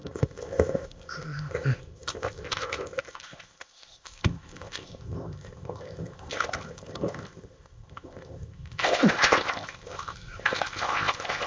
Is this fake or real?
fake